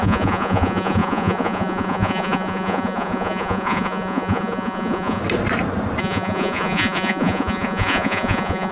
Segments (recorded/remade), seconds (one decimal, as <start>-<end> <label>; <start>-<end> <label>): 0.0-5.2 remade; 5.2-6.0 recorded; 6.0-8.7 remade